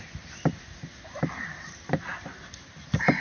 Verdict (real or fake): real